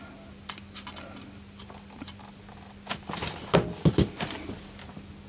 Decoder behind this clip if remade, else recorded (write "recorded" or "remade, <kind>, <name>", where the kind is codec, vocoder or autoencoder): recorded